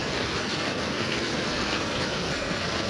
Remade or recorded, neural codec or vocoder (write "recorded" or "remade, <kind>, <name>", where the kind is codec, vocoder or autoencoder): remade, codec, SNAC